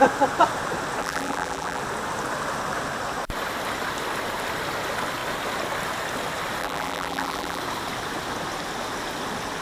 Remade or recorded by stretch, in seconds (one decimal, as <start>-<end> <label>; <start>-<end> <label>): 0.0-1.0 recorded; 1.0-1.8 remade; 1.8-6.6 recorded; 6.6-7.6 remade; 7.6-9.6 recorded